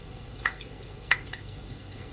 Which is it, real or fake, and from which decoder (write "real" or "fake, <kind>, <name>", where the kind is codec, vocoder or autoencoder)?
fake, codec, SNAC